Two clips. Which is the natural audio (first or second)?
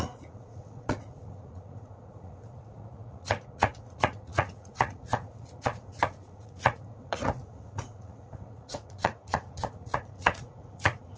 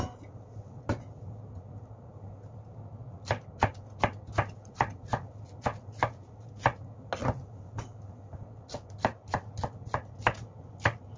second